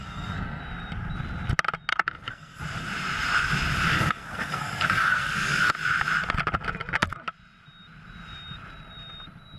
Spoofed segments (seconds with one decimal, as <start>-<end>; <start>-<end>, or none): 0.0-0.6; 1.9-2.6; 3.9-5.7